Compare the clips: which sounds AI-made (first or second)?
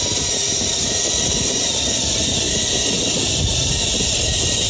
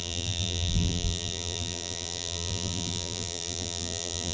second